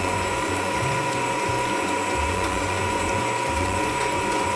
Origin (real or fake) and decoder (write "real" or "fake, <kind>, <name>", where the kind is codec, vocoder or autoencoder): fake, vocoder, Vocos